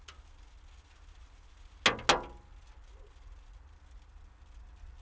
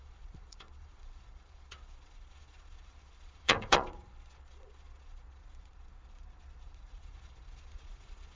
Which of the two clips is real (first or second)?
first